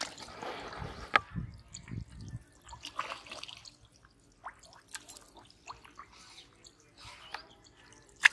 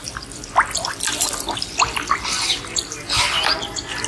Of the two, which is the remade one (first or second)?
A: second